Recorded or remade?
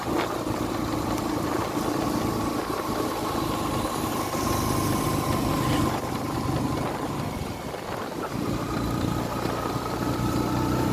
recorded